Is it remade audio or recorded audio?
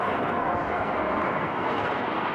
remade